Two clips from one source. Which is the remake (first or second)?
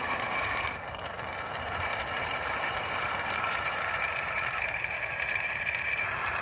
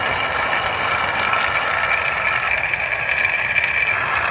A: first